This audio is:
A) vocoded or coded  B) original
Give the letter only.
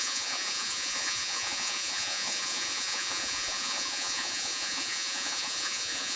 A